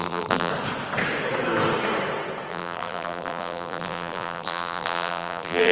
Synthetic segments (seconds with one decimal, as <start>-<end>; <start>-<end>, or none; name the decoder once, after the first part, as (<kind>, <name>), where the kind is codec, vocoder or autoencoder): 0.0-0.5 (vocoder, BigVGAN v2); 2.5-5.7